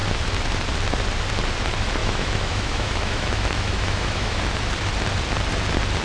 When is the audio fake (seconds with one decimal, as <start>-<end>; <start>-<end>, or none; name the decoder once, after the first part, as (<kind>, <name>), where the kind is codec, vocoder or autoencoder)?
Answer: 2.0-4.4 (autoencoder, DAC-VAE)